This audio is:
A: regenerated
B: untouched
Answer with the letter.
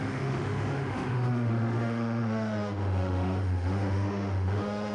A